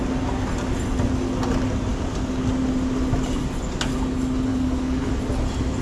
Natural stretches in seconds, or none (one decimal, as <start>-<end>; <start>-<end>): 0.0-4.5; 5.2-5.8